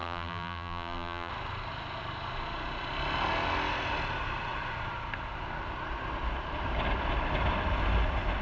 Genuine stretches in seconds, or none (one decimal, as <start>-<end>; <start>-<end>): 1.3-8.4